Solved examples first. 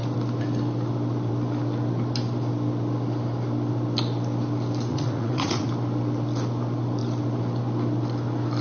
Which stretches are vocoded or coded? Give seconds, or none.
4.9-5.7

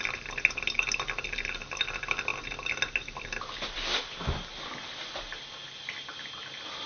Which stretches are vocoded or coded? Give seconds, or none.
none

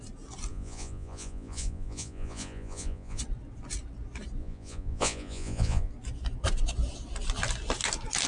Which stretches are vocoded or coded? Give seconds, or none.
0.5-3.2; 4.4-5.9

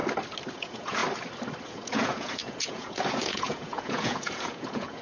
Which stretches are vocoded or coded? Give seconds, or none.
0.5-1.0; 1.7-5.0

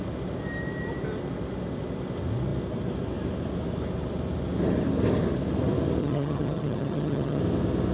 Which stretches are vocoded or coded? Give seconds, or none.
6.0-7.4

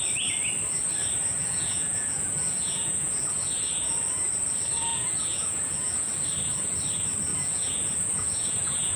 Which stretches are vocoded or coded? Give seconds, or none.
1.4-3.9; 4.9-6.1; 7.3-9.0